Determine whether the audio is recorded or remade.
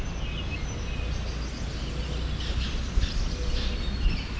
recorded